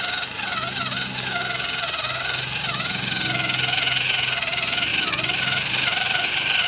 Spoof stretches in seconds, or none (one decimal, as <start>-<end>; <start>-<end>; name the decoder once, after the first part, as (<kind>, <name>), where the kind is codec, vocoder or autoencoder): 4.9-6.7 (vocoder, BigVGAN v2)